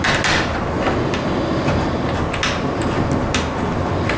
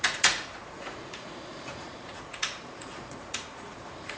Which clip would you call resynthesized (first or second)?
second